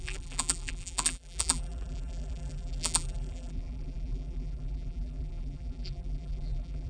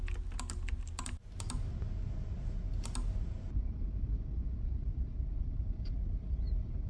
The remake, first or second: first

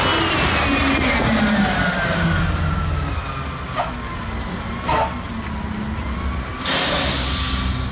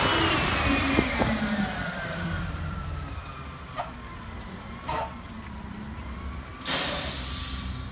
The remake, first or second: second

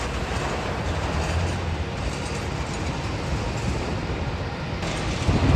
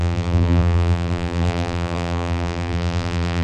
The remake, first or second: second